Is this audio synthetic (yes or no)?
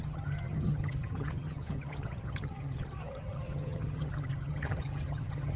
yes